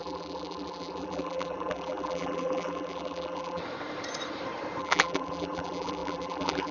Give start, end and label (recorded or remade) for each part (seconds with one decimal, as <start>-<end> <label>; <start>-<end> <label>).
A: 0.0-3.6 remade; 3.6-4.8 recorded; 4.8-6.7 remade